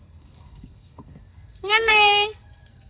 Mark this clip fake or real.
fake